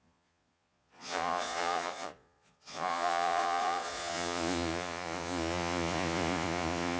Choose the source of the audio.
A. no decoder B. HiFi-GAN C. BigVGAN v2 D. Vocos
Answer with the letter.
D